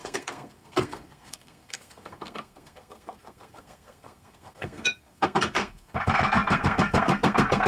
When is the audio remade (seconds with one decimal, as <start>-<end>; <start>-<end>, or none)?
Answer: 0.0-7.7